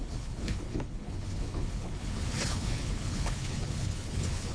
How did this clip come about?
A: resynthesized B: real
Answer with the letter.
A